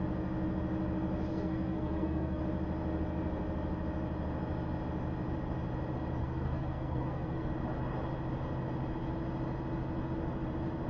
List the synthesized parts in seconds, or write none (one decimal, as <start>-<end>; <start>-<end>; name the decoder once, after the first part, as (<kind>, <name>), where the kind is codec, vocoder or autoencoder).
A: 1.3-2.4 (codec, SNAC); 6.2-7.5